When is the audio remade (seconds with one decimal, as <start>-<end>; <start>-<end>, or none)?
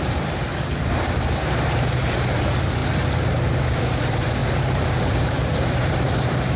0.0-0.5; 1.2-2.8; 3.5-6.6